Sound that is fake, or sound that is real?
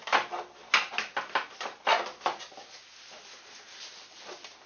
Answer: real